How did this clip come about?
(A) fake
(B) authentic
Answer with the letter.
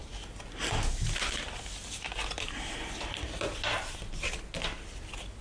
B